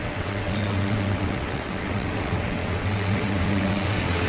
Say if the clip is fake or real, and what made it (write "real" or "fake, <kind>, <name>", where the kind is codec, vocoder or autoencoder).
fake, vocoder, WaveNeXt